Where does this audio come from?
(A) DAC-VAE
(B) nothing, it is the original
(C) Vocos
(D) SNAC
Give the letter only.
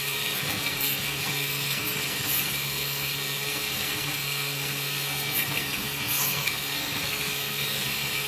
D